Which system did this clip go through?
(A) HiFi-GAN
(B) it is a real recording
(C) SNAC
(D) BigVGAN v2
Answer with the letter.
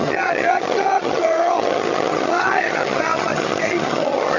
A